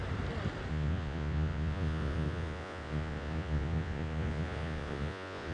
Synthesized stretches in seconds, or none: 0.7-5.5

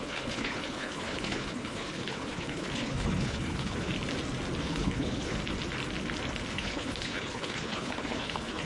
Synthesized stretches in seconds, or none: 0.0-3.9; 4.6-5.4; 6.5-8.7